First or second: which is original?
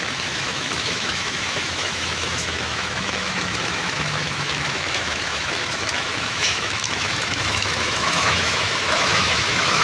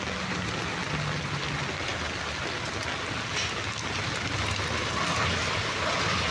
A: second